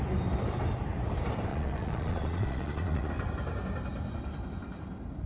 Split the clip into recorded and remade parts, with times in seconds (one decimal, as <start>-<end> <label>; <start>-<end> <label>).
0.0-1.5 recorded; 1.5-3.1 remade; 3.1-5.3 recorded